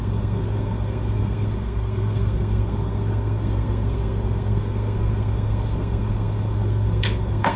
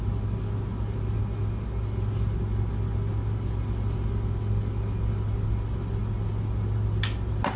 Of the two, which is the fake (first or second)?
first